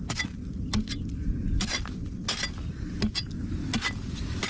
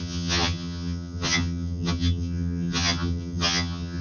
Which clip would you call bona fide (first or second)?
first